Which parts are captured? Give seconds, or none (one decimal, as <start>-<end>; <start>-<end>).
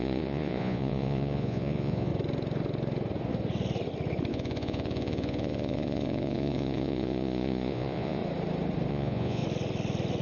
2.1-4.3; 8.2-8.9; 9.4-10.2